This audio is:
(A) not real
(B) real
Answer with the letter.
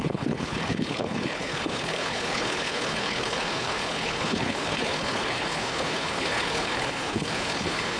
A